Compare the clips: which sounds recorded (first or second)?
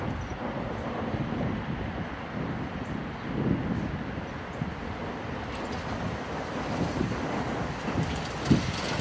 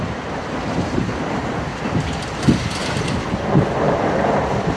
first